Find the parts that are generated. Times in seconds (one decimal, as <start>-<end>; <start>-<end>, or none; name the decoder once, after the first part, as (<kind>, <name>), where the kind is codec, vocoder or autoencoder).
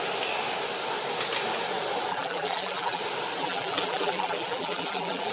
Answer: 2.1-3.0 (vocoder, BigVGAN v2); 3.4-5.3